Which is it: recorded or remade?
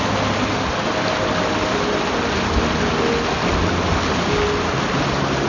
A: recorded